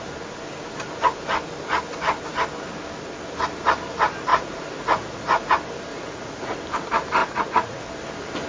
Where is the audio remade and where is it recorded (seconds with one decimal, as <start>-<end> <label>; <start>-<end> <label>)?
0.0-4.3 recorded; 4.3-5.5 remade; 5.5-5.9 recorded; 5.9-6.6 remade; 6.6-7.2 recorded; 7.2-7.8 remade; 7.8-8.5 recorded